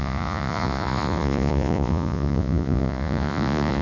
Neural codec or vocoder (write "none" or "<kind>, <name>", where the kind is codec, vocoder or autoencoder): vocoder, Vocos